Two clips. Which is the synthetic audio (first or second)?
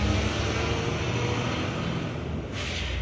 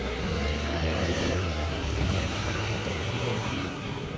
second